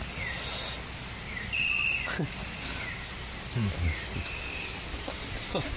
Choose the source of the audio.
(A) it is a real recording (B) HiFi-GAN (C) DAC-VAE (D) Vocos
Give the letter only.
A